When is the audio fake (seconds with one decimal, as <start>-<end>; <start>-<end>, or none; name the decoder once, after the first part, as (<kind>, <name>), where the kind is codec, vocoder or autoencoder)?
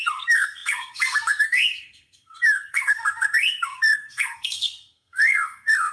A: 0.0-5.9 (codec, SNAC)